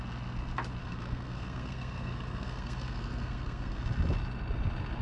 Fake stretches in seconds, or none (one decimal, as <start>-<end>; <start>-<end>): 0.8-3.8